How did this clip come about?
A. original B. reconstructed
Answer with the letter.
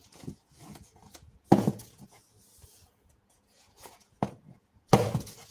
B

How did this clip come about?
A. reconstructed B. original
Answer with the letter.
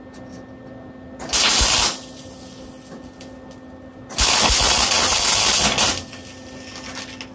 B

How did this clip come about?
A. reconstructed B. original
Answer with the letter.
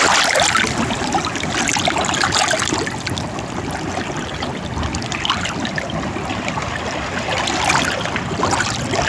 B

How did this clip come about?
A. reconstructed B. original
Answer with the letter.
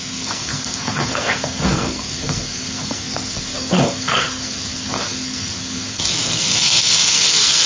A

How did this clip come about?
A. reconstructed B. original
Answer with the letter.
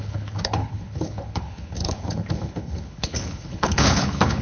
A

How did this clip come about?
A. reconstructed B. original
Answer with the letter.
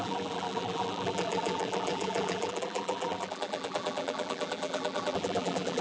A